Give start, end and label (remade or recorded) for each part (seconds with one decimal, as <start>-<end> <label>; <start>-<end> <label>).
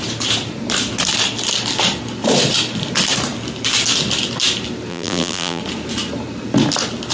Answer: 0.0-4.9 recorded; 4.9-5.6 remade; 5.6-7.1 recorded